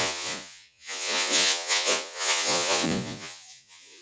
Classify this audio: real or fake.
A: fake